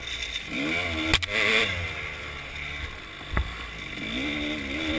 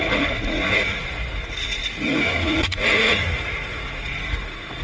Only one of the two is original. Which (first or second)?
first